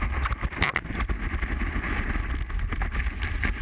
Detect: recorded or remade recorded